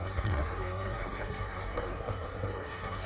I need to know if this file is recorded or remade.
remade